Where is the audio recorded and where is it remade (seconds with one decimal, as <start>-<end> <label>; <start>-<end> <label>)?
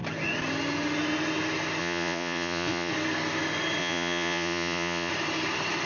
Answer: 0.0-1.8 recorded; 1.8-2.9 remade; 2.9-3.8 recorded; 3.8-5.1 remade; 5.1-5.9 recorded